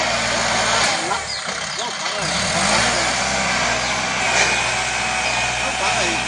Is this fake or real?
real